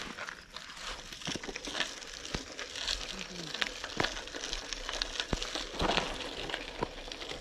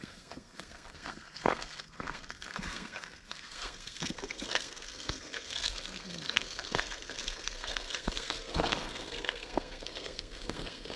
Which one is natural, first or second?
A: first